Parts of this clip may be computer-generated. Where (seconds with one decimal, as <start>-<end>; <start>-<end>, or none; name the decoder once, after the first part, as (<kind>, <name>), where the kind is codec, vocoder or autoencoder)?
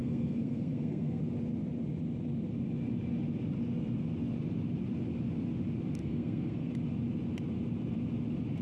0.0-1.2 (codec, SNAC); 6.0-6.7